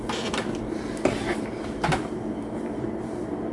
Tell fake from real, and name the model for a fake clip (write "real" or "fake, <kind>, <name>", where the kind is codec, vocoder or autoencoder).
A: fake, vocoder, BigVGAN v2